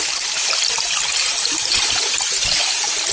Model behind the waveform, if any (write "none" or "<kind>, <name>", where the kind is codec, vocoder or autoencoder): none